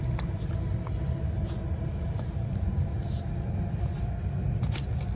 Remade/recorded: recorded